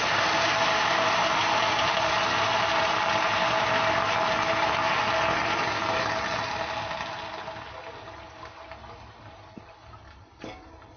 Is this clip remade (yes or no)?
no